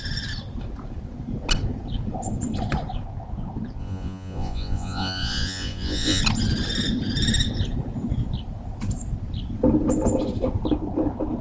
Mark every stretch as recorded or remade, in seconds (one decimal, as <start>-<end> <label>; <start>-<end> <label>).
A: 0.0-3.8 recorded; 3.8-6.2 remade; 6.2-11.4 recorded